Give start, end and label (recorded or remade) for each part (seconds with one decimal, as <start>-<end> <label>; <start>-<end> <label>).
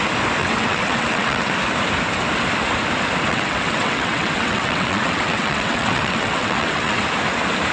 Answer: 0.0-0.4 recorded; 0.4-1.5 remade; 1.5-3.3 recorded; 3.3-7.0 remade; 7.0-7.7 recorded